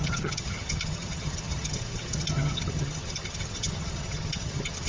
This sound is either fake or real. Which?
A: fake